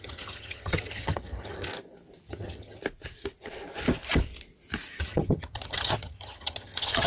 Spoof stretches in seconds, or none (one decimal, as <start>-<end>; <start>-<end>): 0.0-1.7; 2.3-2.8; 5.0-7.1